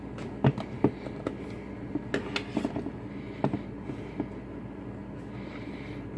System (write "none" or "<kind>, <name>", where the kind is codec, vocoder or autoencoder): none